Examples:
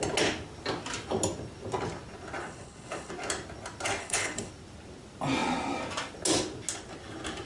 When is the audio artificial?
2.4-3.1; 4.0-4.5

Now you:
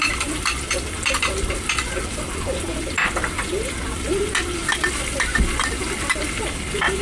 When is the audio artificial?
none

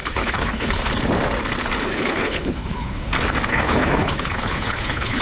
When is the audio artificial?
0.0-0.9; 1.9-3.1; 3.5-5.2

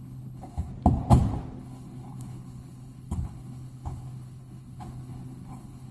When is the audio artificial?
0.0-0.7; 1.6-5.9

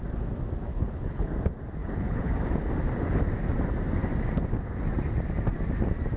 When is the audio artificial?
0.7-1.3; 1.8-2.3

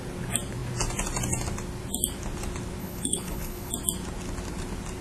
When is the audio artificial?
2.8-3.7

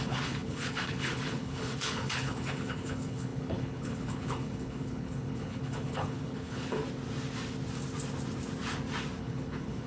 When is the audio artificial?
0.0-6.8; 9.2-9.9

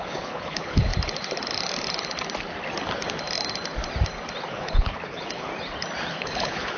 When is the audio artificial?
0.0-0.9; 4.5-5.5; 6.1-6.8